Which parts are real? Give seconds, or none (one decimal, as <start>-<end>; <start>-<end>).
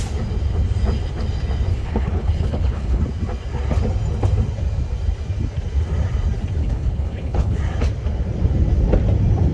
0.0-1.7; 3.0-6.6; 7.6-9.5